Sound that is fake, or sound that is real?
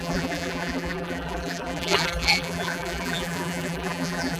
fake